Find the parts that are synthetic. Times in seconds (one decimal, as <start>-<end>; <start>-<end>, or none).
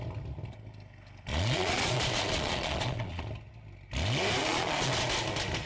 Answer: 1.3-3.2; 4.4-4.9